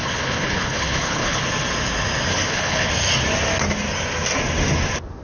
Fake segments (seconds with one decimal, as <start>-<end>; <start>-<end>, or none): 0.0-1.4; 2.3-2.9